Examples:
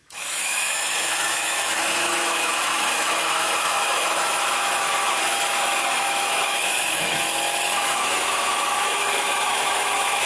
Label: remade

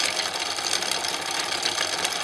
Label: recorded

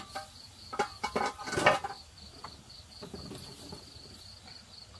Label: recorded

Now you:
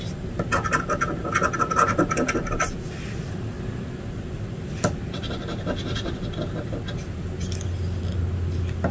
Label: recorded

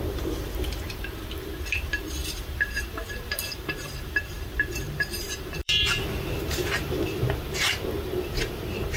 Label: remade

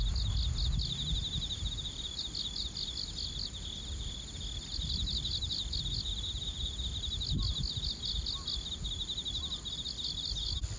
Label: recorded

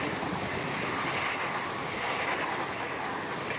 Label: recorded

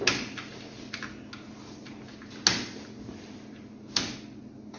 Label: recorded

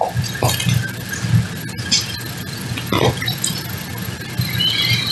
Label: recorded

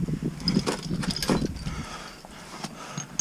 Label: recorded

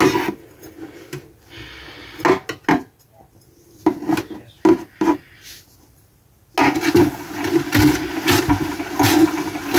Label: recorded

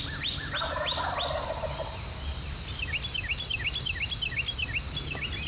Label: recorded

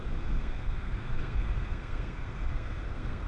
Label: remade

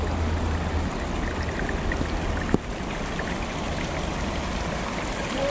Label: recorded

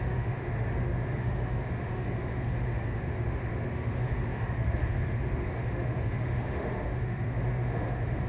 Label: remade